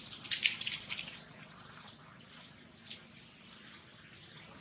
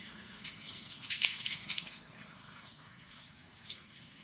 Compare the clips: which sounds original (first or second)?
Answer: first